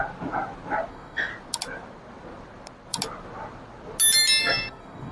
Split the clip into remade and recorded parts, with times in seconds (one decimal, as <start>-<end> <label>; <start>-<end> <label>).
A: 0.0-0.9 recorded; 0.9-1.3 remade; 1.3-4.4 recorded; 4.4-5.1 remade